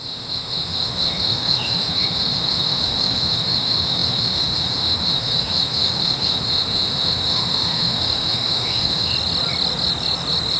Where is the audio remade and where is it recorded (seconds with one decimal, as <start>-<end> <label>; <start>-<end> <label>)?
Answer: 0.0-9.1 remade; 9.1-10.6 recorded